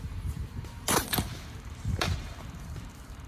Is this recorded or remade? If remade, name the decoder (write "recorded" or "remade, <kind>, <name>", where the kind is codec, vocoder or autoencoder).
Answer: remade, vocoder, BigVGAN v2